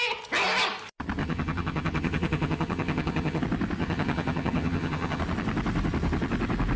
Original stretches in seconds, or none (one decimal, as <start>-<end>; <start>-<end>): 0.0-1.2; 3.4-3.8; 5.2-6.8